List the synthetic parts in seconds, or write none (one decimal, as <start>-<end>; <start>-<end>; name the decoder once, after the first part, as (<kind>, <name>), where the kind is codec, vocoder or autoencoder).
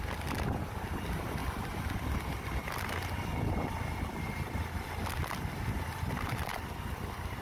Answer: 0.0-1.4 (vocoder, BigVGAN v2); 4.2-6.5